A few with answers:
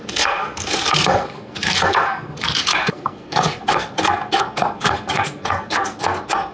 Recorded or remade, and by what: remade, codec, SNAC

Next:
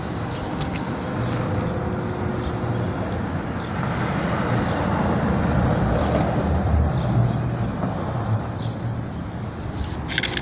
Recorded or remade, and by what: recorded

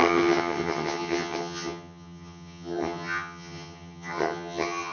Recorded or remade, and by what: remade, vocoder, HiFi-GAN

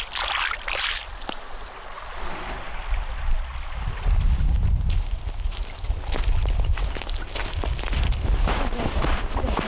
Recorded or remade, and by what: recorded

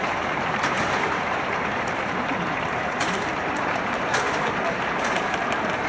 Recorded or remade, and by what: remade, vocoder, BigVGAN v2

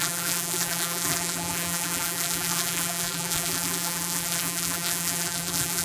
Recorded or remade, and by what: remade, vocoder, BigVGAN v2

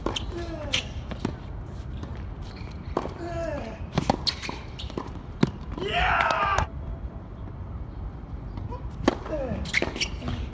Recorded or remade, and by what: recorded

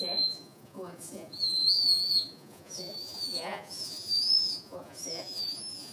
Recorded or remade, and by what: remade, vocoder, Vocos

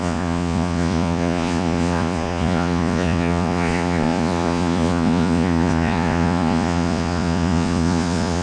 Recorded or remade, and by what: remade, vocoder, Vocos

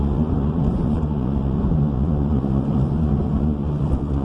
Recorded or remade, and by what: remade, vocoder, Vocos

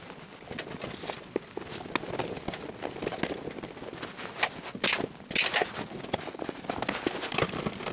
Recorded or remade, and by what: recorded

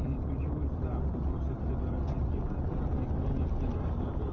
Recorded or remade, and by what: recorded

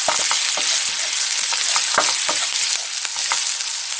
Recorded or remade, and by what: recorded